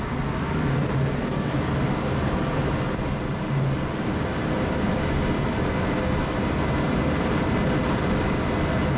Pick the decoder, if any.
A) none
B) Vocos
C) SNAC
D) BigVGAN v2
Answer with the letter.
A